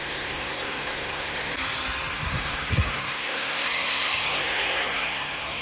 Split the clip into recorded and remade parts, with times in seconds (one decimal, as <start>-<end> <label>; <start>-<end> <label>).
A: 0.0-1.5 remade; 1.5-2.1 recorded; 2.1-5.6 remade